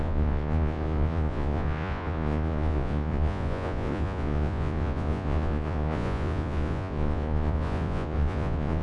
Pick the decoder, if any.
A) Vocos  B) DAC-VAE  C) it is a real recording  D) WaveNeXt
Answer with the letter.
A